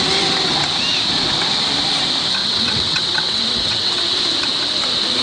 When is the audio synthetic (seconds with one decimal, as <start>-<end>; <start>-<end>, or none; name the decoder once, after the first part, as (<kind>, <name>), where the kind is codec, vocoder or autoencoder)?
2.4-4.0 (vocoder, WaveNeXt)